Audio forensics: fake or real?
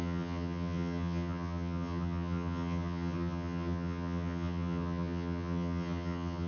fake